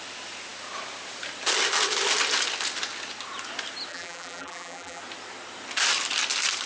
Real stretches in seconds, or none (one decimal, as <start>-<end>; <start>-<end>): 0.0-3.9; 5.0-6.7